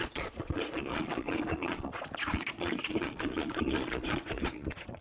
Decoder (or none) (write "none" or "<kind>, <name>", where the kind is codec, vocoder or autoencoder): vocoder, Vocos